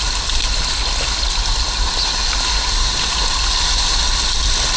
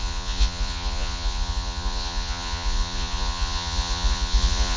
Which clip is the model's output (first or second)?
second